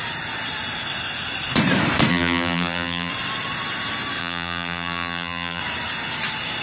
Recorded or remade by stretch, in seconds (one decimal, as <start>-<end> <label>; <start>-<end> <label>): 0.0-2.1 recorded; 2.1-3.1 remade; 3.1-4.2 recorded; 4.2-5.6 remade; 5.6-6.6 recorded